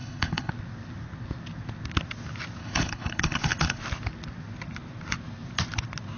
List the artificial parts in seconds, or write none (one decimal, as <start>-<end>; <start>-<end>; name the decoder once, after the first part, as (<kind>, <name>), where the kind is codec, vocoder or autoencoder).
0.0-0.5 (codec, HILCodec); 2.6-3.8